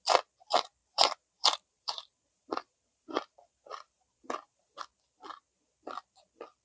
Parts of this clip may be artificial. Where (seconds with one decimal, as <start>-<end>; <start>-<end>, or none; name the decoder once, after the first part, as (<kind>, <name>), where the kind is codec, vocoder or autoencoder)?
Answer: 0.8-4.8 (vocoder, BigVGAN v2)